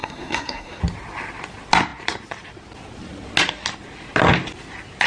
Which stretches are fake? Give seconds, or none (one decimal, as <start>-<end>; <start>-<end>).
0.0-0.8